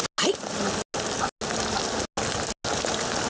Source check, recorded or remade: recorded